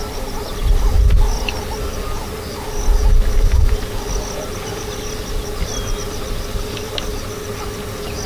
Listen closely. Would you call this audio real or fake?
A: real